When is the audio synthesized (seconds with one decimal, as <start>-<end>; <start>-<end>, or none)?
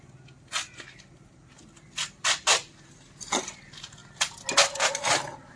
none